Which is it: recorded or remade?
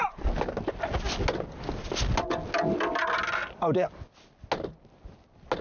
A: recorded